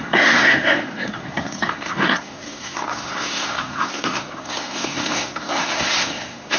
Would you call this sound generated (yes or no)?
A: yes